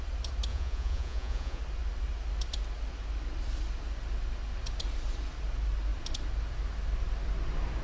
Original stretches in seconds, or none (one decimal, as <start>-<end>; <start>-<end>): 0.0-0.5; 1.6-7.8